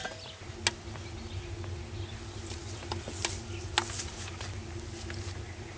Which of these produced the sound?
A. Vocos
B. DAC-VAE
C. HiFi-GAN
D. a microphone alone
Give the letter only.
D